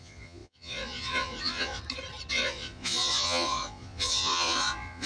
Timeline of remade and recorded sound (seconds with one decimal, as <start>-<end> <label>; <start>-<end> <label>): 0.0-1.8 remade; 1.8-2.3 recorded; 2.3-5.1 remade